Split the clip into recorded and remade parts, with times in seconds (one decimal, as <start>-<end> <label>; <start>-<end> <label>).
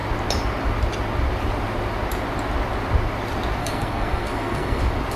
0.0-3.6 recorded; 3.6-4.8 remade; 4.8-5.2 recorded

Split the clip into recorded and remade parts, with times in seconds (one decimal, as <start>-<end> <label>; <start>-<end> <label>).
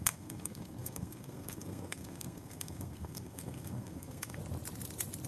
0.0-4.4 remade; 4.4-5.3 recorded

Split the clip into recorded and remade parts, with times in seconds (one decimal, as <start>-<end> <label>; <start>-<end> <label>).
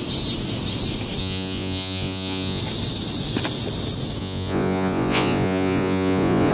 0.0-1.2 recorded; 1.2-2.6 remade; 2.6-4.2 recorded; 4.2-6.5 remade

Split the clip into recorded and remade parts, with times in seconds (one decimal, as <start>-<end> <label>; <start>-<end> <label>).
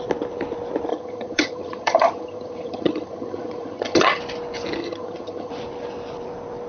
0.0-0.9 recorded; 0.9-4.2 remade; 4.2-4.8 recorded; 4.8-5.5 remade; 5.5-6.7 recorded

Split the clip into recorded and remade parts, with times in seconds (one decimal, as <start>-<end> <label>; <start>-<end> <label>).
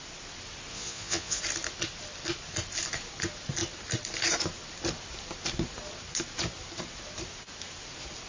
0.0-0.7 recorded; 0.7-1.4 remade; 1.4-8.3 recorded